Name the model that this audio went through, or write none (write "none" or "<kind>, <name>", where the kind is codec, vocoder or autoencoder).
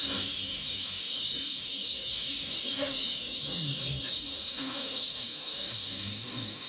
codec, DAC